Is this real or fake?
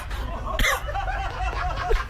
real